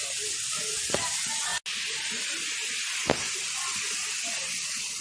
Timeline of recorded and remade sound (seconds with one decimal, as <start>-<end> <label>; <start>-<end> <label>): 0.0-5.0 recorded